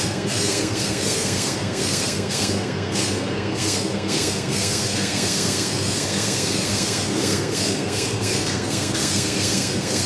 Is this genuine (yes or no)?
no